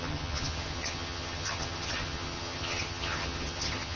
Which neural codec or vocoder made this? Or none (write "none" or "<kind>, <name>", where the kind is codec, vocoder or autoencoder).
vocoder, HiFi-GAN